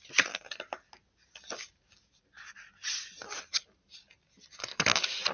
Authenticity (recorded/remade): recorded